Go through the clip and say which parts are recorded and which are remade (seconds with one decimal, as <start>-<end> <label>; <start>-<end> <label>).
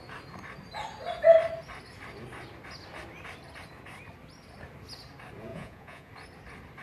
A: 0.0-5.5 recorded; 5.5-6.1 remade; 6.1-6.8 recorded